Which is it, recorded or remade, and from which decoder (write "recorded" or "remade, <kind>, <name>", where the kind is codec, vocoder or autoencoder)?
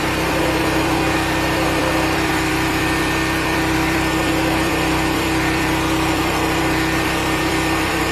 remade, vocoder, BigVGAN v2